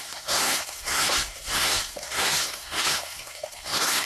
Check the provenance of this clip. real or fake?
fake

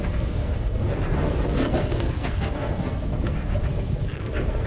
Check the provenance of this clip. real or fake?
fake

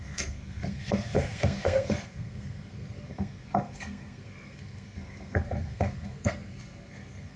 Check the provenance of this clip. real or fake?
fake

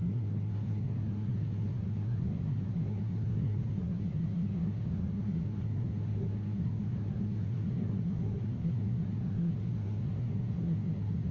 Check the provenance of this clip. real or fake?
fake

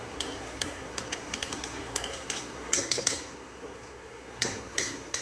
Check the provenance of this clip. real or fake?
fake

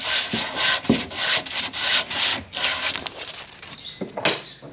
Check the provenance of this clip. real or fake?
real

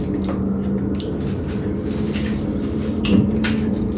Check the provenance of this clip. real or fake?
real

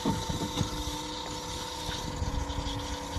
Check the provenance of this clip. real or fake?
real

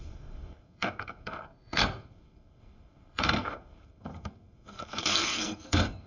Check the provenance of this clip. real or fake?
fake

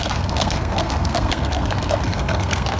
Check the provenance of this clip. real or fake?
fake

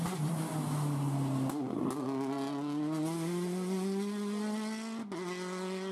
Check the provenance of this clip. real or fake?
real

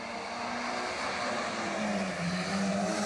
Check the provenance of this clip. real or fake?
real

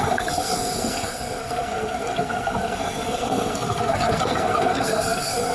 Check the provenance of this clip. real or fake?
fake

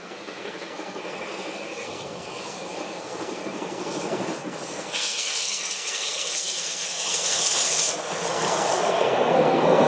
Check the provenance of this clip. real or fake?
fake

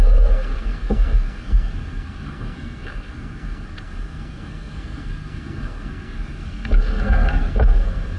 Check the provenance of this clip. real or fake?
fake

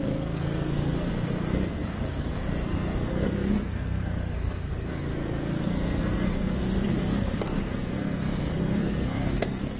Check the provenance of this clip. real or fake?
fake